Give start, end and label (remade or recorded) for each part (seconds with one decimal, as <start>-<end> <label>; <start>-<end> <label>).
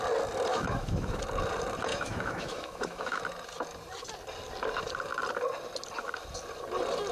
0.0-0.5 recorded; 0.5-1.2 remade; 1.2-1.9 recorded; 1.9-3.2 remade; 3.2-7.1 recorded